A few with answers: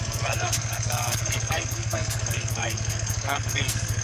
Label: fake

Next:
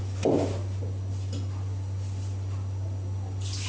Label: real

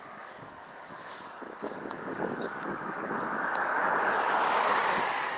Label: fake